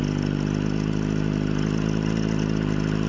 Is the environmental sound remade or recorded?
recorded